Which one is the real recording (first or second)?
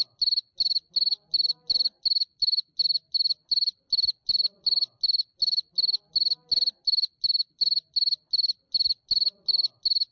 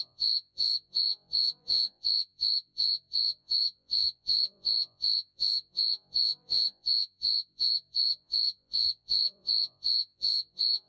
first